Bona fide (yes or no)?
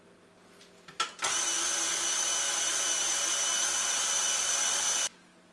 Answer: yes